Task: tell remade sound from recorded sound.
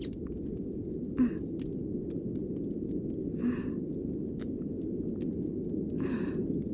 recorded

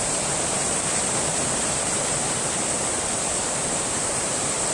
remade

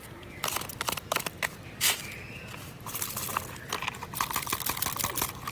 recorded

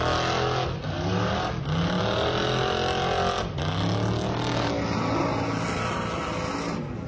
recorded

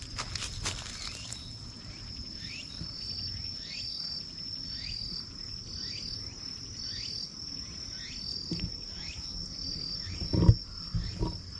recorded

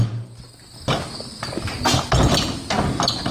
recorded